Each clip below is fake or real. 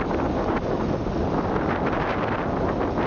real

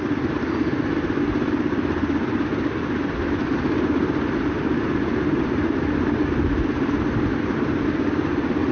real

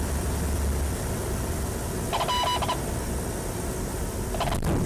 real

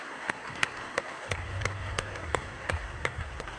fake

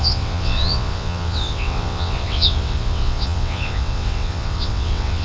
fake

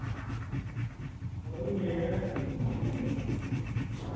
real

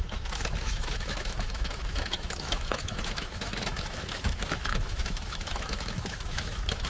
fake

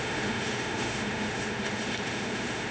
fake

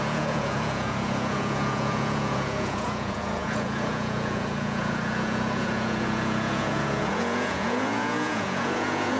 fake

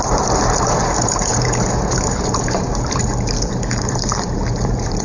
fake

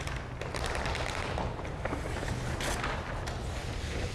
real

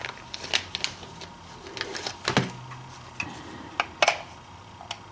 real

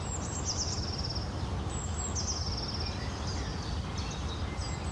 real